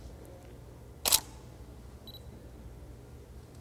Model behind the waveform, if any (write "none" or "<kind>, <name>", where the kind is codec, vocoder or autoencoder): none